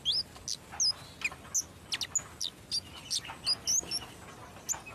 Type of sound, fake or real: real